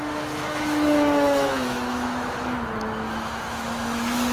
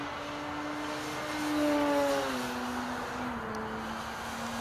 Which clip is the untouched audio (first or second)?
second